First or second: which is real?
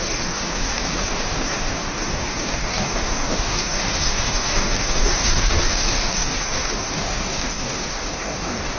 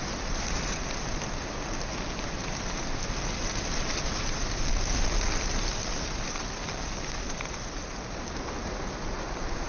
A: second